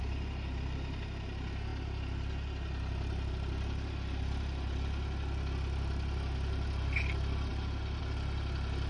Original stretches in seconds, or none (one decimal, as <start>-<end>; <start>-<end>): 0.0-8.9

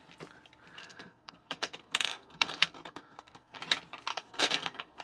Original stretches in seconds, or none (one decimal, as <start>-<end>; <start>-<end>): 0.0-0.8; 3.6-4.1

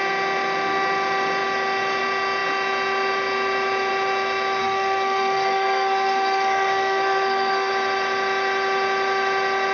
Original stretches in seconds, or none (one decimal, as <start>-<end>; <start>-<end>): 0.0-4.6; 7.7-9.7